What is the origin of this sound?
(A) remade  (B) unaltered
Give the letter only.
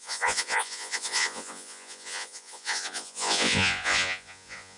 A